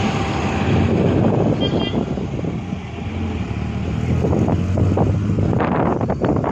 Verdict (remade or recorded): recorded